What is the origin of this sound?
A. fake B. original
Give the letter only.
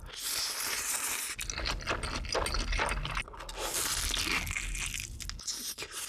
B